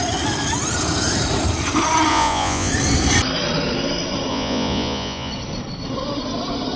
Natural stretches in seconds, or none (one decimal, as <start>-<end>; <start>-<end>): 0.0-2.1; 2.7-4.3; 5.3-6.8